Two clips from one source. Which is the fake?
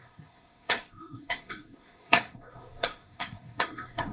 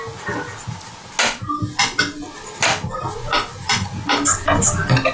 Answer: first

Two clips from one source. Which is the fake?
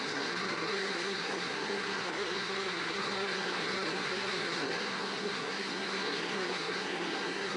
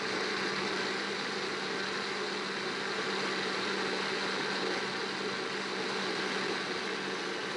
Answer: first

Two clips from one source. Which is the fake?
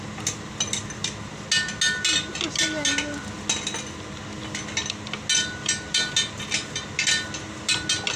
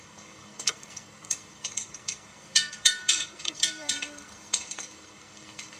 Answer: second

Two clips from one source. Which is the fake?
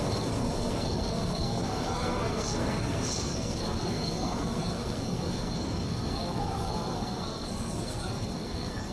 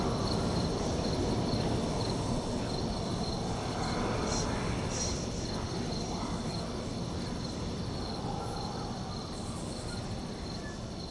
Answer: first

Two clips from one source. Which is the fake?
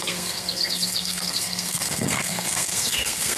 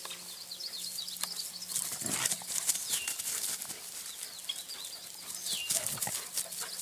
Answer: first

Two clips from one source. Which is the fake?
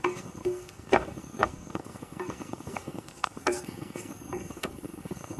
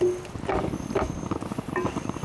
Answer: first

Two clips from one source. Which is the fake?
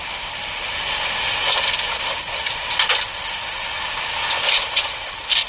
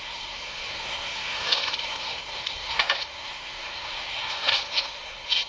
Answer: second